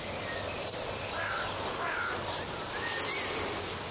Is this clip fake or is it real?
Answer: real